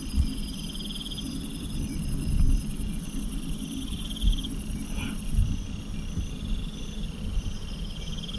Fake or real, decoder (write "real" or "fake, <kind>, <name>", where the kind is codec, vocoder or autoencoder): fake, vocoder, BigVGAN v2